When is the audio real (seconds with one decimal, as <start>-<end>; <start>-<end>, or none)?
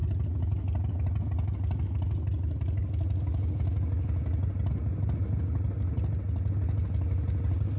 0.0-7.8